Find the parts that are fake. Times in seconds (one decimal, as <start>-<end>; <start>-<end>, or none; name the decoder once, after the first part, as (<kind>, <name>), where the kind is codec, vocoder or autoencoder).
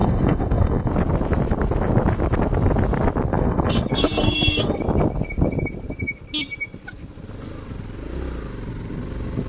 0.0-0.9 (codec, SNAC); 3.3-4.8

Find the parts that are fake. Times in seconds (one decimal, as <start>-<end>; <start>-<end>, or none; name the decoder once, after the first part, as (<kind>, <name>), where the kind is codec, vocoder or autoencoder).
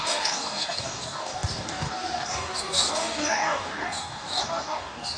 0.0-5.2 (codec, DAC)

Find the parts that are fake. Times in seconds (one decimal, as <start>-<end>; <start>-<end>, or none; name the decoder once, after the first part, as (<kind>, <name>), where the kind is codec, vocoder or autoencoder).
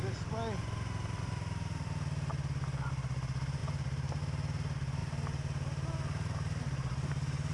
3.6-4.2 (vocoder, BigVGAN v2); 5.0-7.1